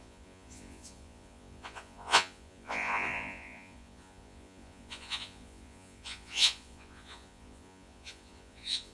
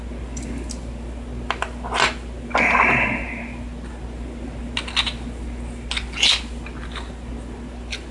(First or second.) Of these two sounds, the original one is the second